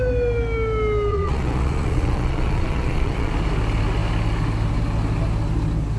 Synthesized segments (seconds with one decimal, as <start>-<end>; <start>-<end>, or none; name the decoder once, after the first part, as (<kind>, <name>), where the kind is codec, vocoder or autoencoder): 1.1-3.3 (vocoder, Vocos)